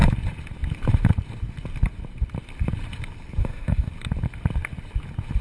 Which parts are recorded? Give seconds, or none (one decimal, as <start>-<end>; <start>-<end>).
0.0-3.4; 3.9-5.4